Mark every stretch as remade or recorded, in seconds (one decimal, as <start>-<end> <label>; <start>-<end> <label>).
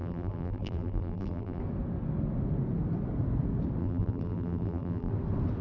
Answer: 0.0-1.6 remade; 1.6-3.8 recorded; 3.8-5.1 remade; 5.1-5.6 recorded